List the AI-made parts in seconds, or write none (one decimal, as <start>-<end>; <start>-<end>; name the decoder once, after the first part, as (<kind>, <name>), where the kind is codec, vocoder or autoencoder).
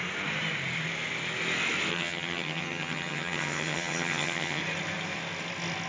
1.9-4.6 (vocoder, HiFi-GAN)